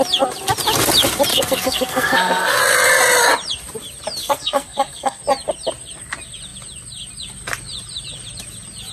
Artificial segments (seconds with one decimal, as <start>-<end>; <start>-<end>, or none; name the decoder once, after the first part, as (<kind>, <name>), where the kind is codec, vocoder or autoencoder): 1.3-2.6 (codec, SNAC); 4.2-5.2